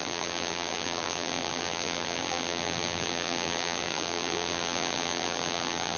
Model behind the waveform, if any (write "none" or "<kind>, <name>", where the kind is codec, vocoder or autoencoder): vocoder, BigVGAN v2